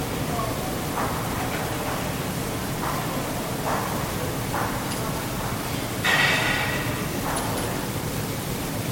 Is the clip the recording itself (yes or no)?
no